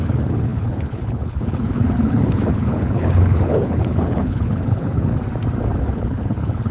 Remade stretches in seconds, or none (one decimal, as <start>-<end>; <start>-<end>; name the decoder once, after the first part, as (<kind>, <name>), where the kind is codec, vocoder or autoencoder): 0.0-5.1 (codec, HILCodec); 5.8-6.7

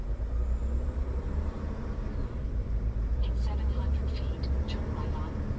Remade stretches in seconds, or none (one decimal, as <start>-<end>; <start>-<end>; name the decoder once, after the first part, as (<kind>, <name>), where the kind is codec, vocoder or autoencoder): 0.6-4.0 (vocoder, BigVGAN v2)